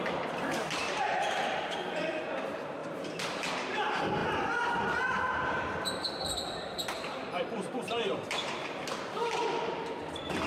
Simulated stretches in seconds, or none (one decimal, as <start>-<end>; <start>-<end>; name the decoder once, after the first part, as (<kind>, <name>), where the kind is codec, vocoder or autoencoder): 0.8-2.2 (vocoder, BigVGAN v2); 2.8-3.5; 4.2-9.0